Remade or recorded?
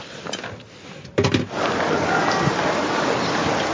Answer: recorded